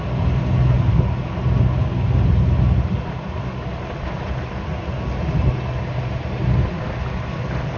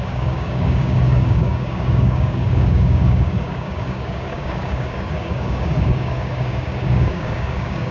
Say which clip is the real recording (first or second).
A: first